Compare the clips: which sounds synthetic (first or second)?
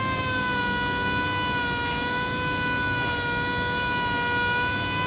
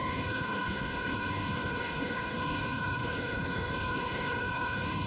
second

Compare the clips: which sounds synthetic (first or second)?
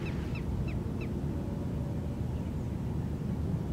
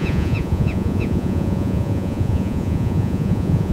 second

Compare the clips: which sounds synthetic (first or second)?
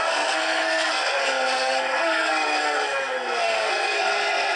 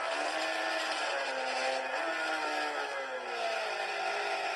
first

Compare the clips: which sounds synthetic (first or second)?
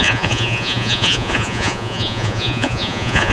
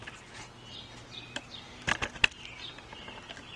first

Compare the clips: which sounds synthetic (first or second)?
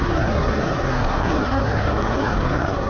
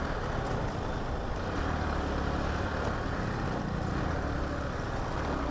first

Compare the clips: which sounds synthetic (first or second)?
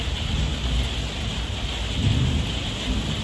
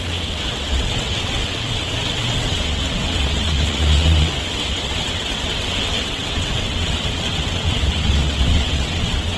second